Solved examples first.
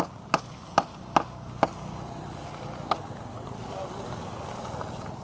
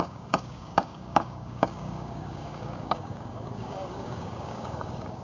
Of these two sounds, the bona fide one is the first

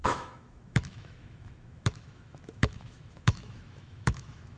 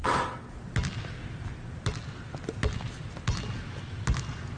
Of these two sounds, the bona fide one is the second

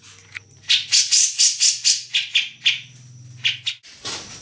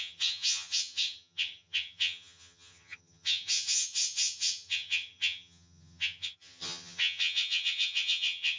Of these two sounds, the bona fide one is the first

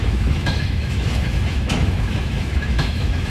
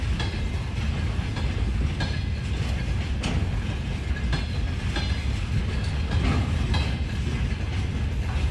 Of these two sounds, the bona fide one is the second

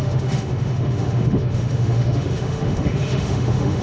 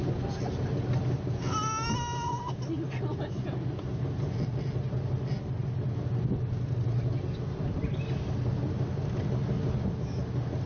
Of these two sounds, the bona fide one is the second